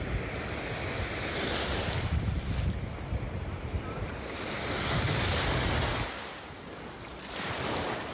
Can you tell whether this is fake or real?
real